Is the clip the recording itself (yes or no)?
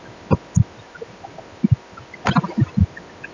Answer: yes